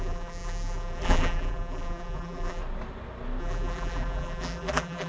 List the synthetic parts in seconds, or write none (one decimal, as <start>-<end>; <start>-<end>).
0.0-2.6; 3.4-5.1